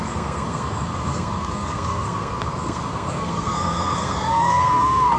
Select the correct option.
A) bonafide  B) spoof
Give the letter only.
B